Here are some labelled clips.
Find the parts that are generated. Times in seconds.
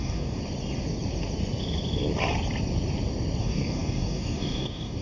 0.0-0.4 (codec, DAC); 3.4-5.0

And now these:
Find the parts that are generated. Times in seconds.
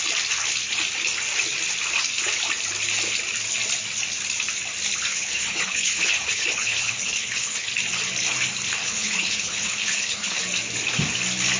5.1-7.7 (codec, HILCodec); 8.8-10.4